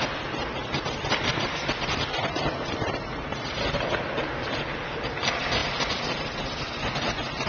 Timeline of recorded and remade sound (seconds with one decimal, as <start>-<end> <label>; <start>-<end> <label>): 0.0-0.6 recorded; 0.6-3.9 remade; 3.9-7.5 recorded